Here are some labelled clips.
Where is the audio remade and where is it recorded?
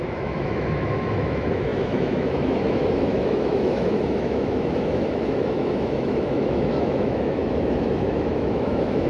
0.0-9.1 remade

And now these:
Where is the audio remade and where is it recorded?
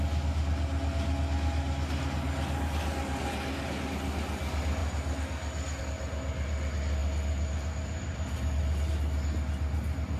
0.0-10.2 recorded